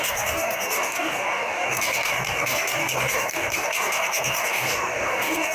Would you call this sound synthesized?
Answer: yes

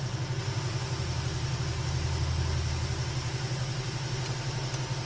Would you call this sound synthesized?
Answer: no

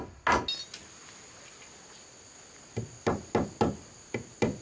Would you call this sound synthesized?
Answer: no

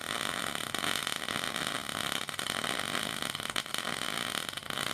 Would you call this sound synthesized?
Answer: no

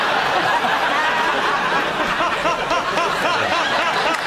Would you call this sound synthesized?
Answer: no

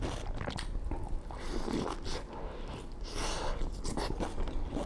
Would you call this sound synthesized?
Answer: no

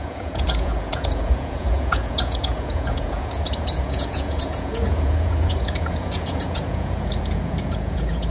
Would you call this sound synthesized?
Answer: yes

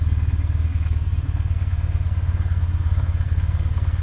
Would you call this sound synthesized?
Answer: yes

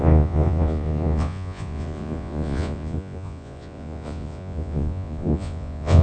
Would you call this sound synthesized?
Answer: yes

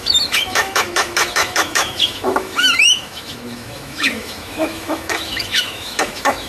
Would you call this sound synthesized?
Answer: yes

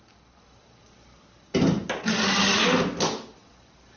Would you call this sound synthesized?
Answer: no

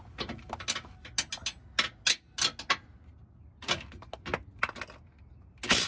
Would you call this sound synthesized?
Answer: no